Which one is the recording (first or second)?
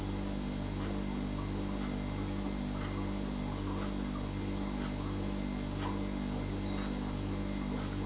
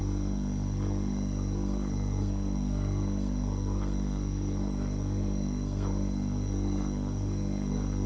first